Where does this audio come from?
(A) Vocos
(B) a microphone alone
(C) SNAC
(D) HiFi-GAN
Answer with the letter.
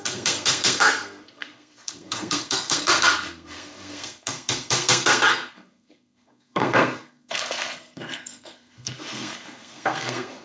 C